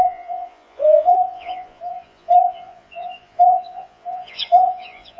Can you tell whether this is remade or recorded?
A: remade